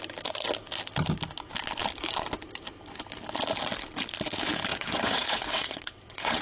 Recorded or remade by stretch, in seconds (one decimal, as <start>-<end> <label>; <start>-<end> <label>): 0.0-4.7 recorded; 4.7-6.4 remade